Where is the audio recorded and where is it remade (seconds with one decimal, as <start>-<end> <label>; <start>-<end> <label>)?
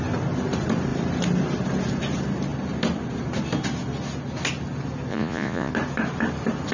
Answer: 0.0-5.1 recorded; 5.1-5.7 remade; 5.7-6.7 recorded